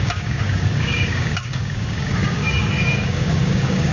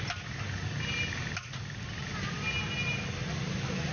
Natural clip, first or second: second